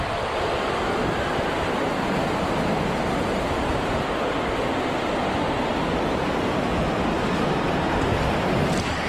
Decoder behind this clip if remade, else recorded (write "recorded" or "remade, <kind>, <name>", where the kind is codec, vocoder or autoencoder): recorded